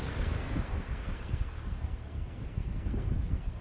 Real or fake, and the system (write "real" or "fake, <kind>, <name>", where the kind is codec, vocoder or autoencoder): fake, codec, SNAC